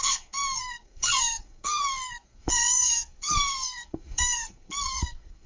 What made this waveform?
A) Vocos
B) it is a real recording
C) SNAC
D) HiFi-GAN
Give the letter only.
C